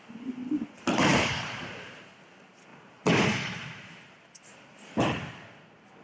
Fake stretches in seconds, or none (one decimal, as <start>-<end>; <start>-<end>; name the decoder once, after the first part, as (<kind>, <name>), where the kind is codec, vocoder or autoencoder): 1.1-2.0 (vocoder, BigVGAN v2); 2.7-5.3